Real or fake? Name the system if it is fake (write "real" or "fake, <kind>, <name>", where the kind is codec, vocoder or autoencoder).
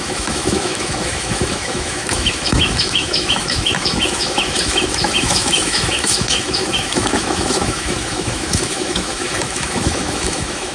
fake, autoencoder, DAC-VAE